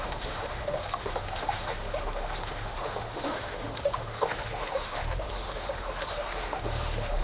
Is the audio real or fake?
fake